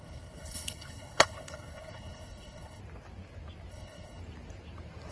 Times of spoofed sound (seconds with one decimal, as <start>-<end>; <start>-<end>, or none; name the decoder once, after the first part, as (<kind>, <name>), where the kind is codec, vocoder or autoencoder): 0.0-2.8 (codec, HILCodec); 3.7-4.2